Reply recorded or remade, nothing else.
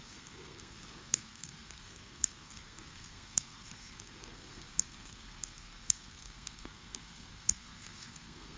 remade